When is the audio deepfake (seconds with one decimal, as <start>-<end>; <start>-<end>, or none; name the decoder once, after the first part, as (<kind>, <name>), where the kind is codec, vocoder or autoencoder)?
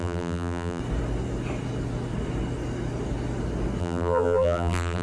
0.0-0.8 (vocoder, BigVGAN v2); 3.8-5.0